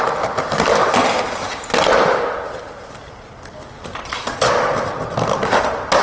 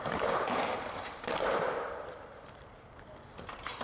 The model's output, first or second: second